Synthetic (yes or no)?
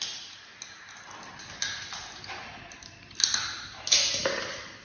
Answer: no